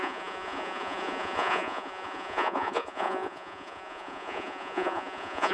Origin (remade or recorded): remade